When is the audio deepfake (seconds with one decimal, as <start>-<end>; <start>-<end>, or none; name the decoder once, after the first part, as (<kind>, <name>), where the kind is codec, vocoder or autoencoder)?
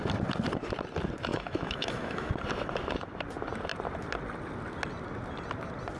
1.3-2.3 (autoencoder, DAC-VAE)